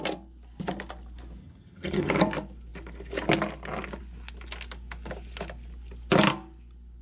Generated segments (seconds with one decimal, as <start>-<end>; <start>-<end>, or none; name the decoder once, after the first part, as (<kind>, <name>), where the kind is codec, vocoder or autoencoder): 1.4-2.1 (vocoder, HiFi-GAN)